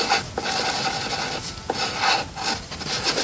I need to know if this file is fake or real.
real